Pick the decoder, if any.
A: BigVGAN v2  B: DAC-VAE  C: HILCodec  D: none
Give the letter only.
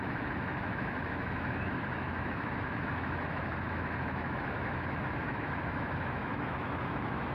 B